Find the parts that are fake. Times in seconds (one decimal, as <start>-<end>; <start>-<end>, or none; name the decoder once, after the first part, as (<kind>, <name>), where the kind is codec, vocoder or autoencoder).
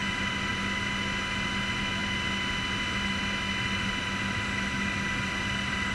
none